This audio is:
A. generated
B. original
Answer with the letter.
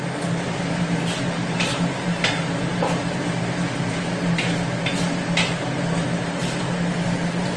B